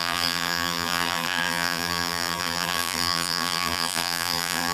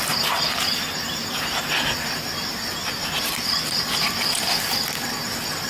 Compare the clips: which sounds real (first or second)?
second